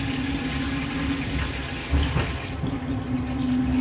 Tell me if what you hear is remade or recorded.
recorded